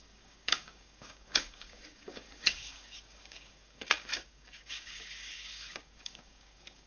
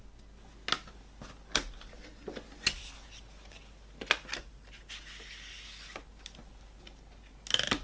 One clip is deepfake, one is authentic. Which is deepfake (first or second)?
first